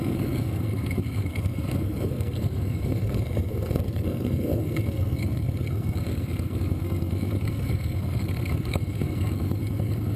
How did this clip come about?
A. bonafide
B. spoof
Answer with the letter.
B